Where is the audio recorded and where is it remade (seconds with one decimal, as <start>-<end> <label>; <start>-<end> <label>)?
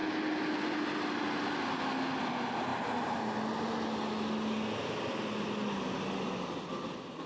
0.0-7.3 recorded